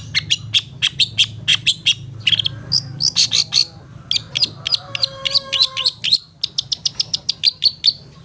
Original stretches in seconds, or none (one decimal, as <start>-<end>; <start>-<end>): 0.0-8.2

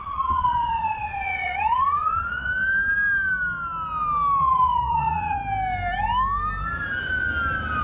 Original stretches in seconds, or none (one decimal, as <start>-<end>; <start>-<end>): 2.5-4.4; 5.4-7.8